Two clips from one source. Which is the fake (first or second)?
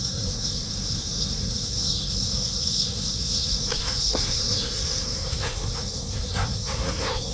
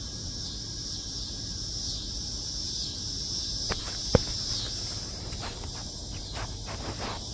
first